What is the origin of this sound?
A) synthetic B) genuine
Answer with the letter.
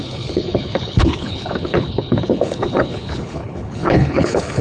A